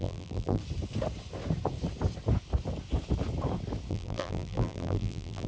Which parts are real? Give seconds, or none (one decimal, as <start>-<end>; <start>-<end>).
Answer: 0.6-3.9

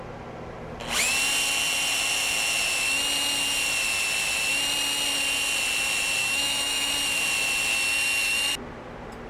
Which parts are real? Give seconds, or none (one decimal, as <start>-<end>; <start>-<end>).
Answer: 0.0-6.2; 6.9-9.3

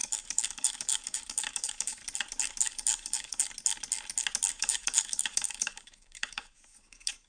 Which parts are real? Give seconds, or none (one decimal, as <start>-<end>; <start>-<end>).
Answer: 2.0-2.6; 3.4-4.5